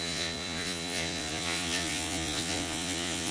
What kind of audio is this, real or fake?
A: fake